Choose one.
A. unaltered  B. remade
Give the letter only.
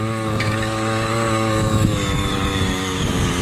B